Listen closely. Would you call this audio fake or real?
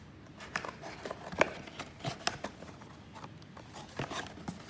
real